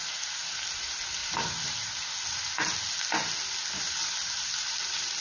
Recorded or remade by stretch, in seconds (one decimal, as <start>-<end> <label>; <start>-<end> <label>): 0.0-5.2 recorded